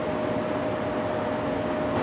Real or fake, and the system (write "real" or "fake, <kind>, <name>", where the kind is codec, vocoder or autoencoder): real